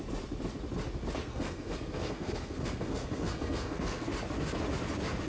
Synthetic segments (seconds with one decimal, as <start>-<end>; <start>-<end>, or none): 1.2-4.1